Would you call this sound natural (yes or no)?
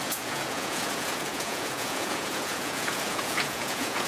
no